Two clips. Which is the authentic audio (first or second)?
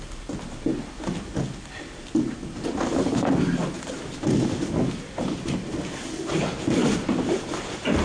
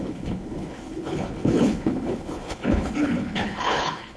first